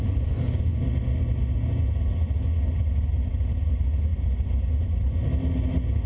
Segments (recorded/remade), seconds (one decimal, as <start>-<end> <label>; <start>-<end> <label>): 0.0-0.7 remade; 0.7-2.8 recorded; 2.8-4.1 remade; 4.1-4.7 recorded; 4.7-5.2 remade; 5.2-6.1 recorded